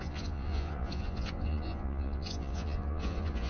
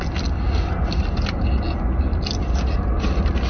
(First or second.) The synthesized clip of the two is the first